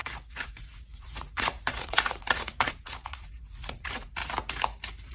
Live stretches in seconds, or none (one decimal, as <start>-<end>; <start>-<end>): 4.2-5.1